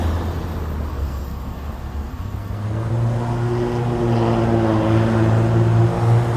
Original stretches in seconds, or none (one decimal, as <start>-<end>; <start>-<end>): 0.0-0.9; 2.9-6.4